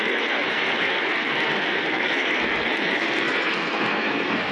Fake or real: fake